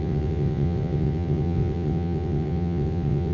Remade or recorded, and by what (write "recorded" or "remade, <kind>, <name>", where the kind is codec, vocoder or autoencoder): remade, vocoder, WaveNeXt